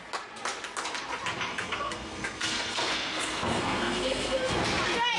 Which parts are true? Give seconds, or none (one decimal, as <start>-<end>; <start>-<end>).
0.0-1.5; 4.6-5.2